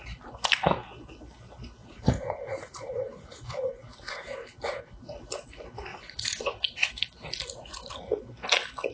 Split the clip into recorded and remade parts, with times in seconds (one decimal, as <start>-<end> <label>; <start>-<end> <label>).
0.0-1.8 recorded; 1.8-3.7 remade; 3.7-5.9 recorded; 5.9-6.9 remade; 6.9-8.9 recorded